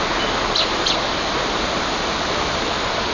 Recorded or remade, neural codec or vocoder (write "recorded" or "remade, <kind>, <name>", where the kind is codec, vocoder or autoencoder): recorded